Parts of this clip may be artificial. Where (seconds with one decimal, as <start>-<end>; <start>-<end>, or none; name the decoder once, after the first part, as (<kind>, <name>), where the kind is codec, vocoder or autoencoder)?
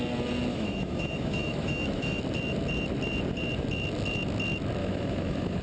0.5-2.2 (autoencoder, DAC-VAE); 4.8-5.6